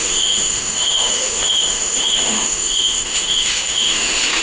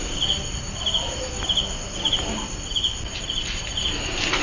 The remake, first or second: first